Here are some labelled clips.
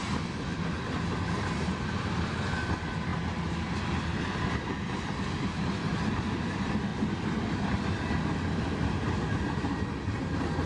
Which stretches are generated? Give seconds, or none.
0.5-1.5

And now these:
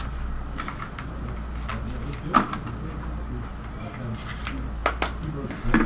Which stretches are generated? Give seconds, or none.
none

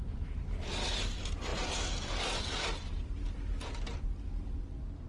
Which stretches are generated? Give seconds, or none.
none

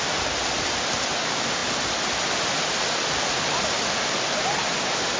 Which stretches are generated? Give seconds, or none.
none

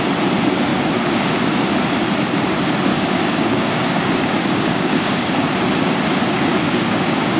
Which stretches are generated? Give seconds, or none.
0.7-1.3; 2.9-5.4; 6.5-7.4

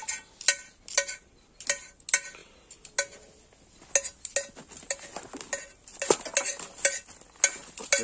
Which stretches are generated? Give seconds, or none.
none